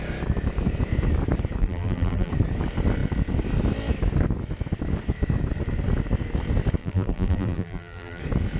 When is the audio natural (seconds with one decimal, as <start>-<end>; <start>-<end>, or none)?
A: 0.0-1.6; 2.3-6.8; 8.2-8.6